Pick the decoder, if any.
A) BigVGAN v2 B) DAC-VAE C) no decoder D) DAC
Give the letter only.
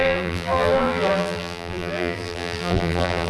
A